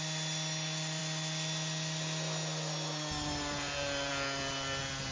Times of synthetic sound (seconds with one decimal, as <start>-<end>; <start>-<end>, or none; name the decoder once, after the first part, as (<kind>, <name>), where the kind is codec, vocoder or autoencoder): none